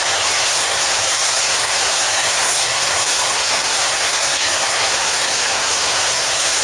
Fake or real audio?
fake